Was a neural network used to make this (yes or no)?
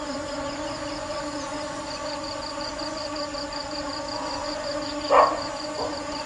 yes